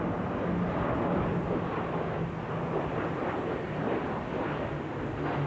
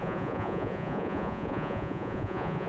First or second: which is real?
first